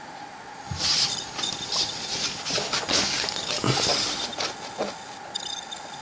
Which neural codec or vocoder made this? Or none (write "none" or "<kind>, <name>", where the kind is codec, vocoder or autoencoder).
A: none